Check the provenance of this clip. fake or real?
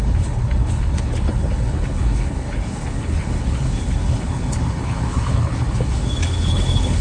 fake